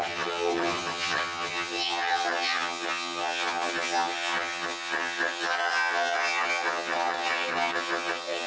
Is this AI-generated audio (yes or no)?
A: yes